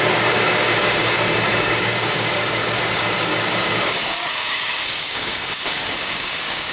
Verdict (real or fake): fake